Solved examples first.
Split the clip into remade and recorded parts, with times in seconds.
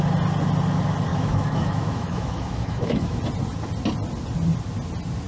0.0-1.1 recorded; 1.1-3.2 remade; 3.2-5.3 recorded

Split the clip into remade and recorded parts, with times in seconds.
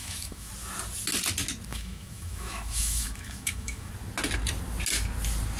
0.0-0.5 remade; 0.5-1.7 recorded; 1.7-3.9 remade; 3.9-5.6 recorded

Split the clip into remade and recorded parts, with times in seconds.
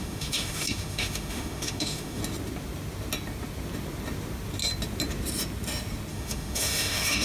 0.0-2.2 remade; 2.2-6.1 recorded; 6.1-7.2 remade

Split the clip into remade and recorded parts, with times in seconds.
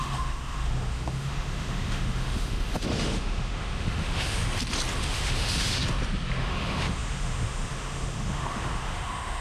0.0-4.4 remade; 4.4-5.0 recorded; 5.0-5.8 remade; 5.8-6.4 recorded; 6.4-9.4 remade